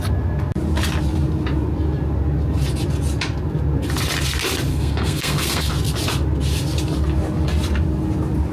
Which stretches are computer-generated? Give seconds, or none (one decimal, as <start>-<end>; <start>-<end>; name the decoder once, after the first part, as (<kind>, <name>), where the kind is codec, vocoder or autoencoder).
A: 4.7-5.7 (codec, SNAC)